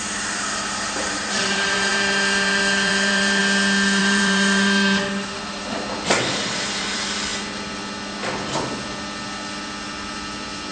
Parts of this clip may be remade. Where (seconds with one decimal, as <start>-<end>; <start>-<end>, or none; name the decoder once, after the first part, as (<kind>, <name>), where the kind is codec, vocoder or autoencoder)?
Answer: 0.0-3.4 (vocoder, BigVGAN v2); 4.0-7.3